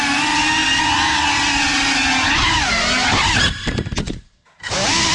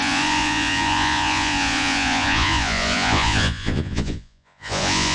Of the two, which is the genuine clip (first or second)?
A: first